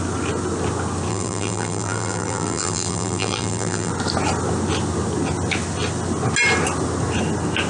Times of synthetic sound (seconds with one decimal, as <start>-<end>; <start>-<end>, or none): 1.1-3.9